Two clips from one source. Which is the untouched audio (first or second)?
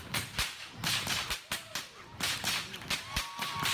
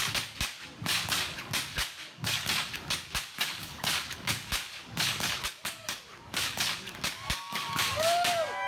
first